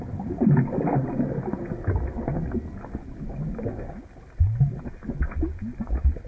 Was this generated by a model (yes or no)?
no